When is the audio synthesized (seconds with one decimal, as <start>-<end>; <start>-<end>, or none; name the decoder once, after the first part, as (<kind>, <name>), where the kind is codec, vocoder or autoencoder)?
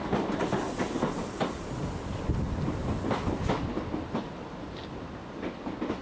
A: none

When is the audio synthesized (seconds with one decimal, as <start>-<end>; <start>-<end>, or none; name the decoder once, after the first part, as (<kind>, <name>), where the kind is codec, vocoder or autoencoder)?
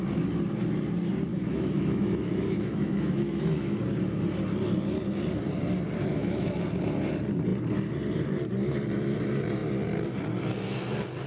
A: 1.3-3.8 (autoencoder, DAC-VAE); 6.1-6.6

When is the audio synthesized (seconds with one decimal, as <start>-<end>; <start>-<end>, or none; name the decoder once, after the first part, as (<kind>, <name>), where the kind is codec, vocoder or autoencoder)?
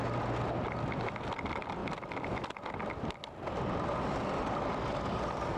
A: none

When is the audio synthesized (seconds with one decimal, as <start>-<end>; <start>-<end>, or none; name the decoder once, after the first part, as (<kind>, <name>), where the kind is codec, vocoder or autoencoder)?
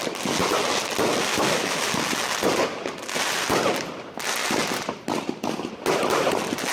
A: 1.3-2.0 (autoencoder, DAC-VAE)